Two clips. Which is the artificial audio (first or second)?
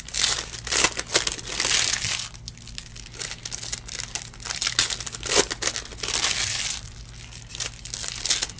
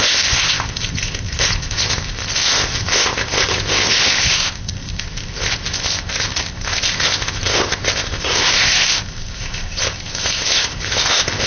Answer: second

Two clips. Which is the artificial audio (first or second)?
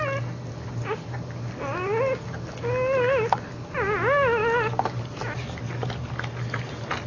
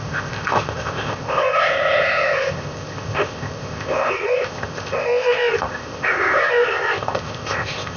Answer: second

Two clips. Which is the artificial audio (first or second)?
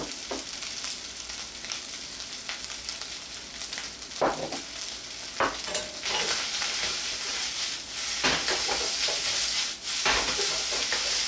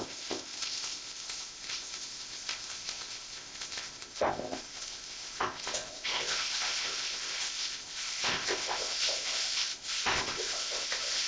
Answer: second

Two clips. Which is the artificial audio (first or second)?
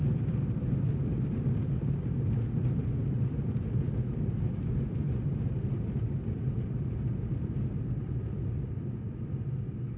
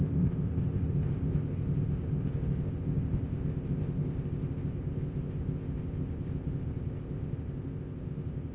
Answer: second